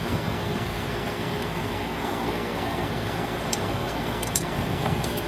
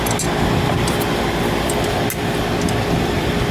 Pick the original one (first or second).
second